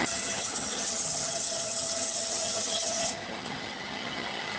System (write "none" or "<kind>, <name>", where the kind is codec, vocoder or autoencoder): vocoder, HiFi-GAN